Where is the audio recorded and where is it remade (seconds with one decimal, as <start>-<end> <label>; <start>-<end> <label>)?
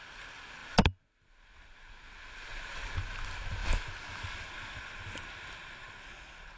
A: 0.0-6.6 recorded